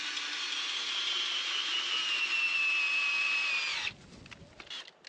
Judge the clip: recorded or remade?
recorded